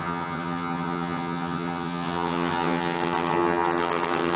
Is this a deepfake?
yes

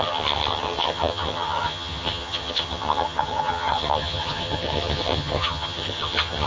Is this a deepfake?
yes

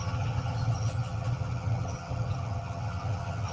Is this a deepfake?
yes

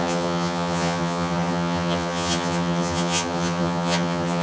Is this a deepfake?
yes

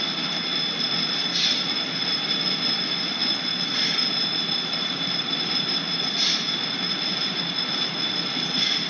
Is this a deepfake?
no